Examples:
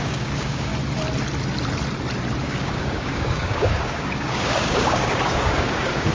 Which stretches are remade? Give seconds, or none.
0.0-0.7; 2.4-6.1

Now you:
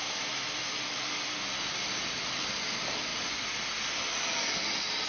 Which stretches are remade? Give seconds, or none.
none

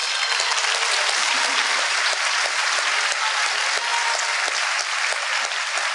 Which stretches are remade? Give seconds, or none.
0.0-3.5

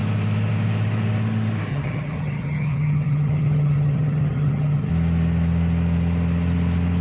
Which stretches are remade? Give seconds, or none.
1.7-4.9